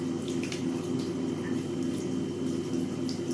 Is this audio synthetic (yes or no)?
no